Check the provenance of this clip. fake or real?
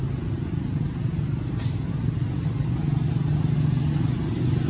real